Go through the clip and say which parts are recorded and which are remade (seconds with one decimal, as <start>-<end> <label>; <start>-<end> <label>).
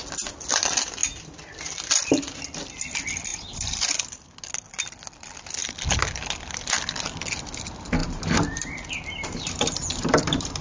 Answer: 0.0-8.0 recorded; 8.0-10.6 remade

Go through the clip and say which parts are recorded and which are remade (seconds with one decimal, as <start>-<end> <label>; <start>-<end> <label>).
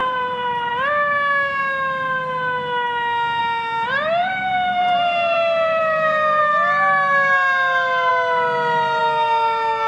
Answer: 0.0-0.7 remade; 0.7-3.4 recorded; 3.4-6.4 remade; 6.4-9.9 recorded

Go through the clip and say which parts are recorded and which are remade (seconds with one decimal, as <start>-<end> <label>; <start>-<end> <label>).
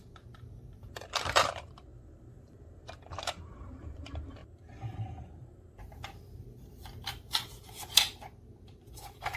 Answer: 0.0-4.4 remade; 4.4-5.4 recorded; 5.4-9.4 remade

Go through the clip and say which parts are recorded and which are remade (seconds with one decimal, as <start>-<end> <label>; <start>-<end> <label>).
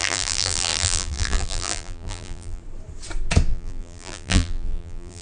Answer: 0.0-2.6 remade; 2.6-3.5 recorded; 3.5-5.2 remade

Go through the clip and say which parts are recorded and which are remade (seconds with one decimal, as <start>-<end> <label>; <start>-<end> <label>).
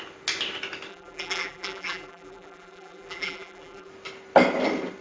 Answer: 0.0-0.9 recorded; 0.9-3.9 remade; 3.9-5.0 recorded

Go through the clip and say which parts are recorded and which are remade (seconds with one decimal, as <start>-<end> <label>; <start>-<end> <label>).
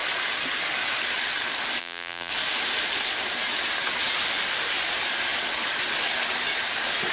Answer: 0.0-1.8 recorded; 1.8-2.3 remade; 2.3-7.1 recorded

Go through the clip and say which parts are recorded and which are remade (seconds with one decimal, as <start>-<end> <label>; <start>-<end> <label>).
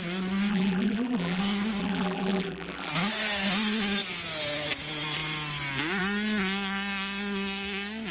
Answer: 0.0-0.5 recorded; 0.5-1.4 remade; 1.4-1.8 recorded; 1.8-2.9 remade; 2.9-8.1 recorded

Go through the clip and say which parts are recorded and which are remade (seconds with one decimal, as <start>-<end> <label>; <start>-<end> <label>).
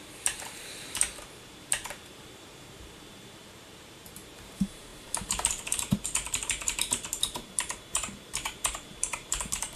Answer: 0.0-9.8 remade